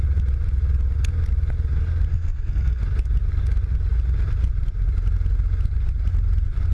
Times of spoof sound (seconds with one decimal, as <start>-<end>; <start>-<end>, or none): 2.1-2.8